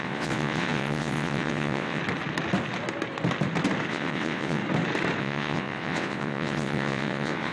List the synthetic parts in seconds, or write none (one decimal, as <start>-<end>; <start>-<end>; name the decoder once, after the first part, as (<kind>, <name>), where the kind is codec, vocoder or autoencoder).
0.0-2.0 (vocoder, WaveNeXt); 3.9-4.6; 5.2-7.5